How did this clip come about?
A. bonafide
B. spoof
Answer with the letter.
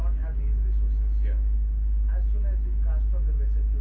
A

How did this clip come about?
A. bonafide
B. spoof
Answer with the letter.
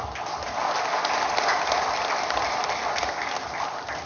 A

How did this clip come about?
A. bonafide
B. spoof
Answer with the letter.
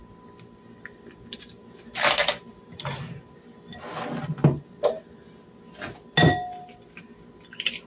A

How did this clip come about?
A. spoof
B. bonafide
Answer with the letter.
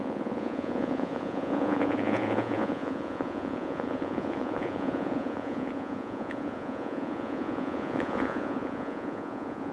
A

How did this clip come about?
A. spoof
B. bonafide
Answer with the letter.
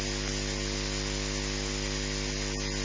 B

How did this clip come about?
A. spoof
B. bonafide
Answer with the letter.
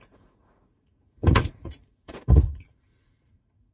A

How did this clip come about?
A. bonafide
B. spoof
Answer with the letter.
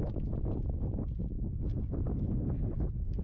A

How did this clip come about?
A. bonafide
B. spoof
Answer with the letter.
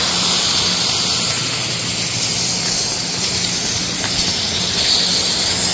A